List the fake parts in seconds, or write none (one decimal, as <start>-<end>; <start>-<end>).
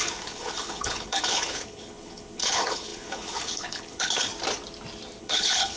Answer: 0.0-4.3; 5.2-5.8